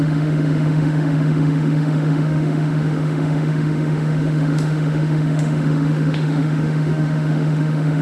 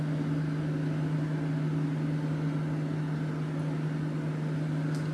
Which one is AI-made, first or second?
first